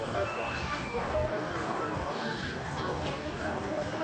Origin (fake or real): fake